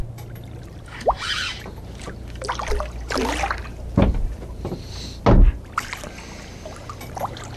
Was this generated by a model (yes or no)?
no